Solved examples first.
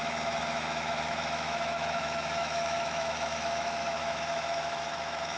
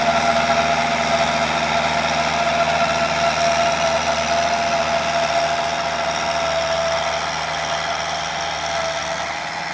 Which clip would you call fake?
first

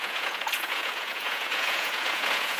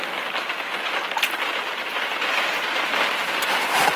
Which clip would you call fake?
first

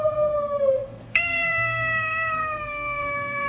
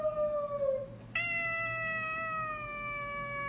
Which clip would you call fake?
first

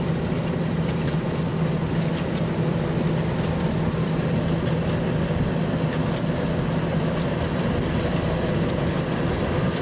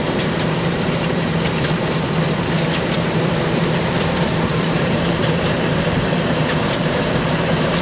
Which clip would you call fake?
second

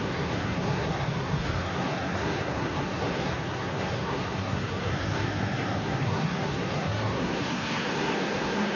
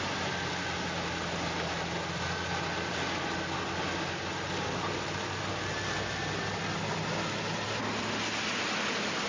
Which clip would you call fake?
first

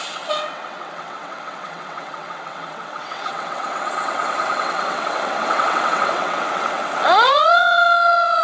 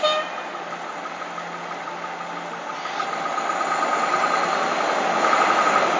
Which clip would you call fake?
first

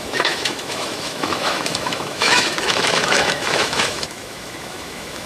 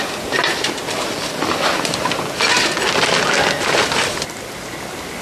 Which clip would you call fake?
first